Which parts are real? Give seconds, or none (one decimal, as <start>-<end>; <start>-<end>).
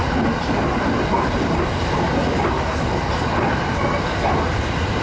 0.0-5.0